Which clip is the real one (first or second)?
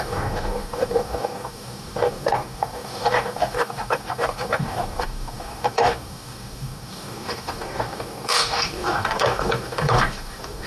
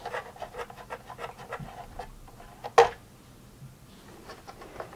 second